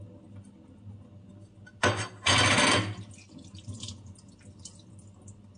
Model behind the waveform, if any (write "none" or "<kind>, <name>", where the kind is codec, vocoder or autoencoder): none